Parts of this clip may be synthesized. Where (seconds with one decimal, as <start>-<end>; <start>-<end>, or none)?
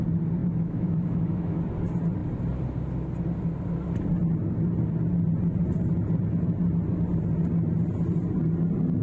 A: 0.4-1.6